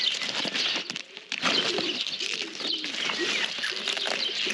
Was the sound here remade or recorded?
recorded